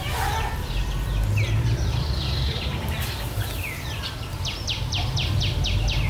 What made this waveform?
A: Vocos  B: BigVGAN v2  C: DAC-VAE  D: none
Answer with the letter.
B